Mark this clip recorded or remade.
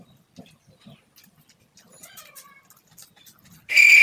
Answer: recorded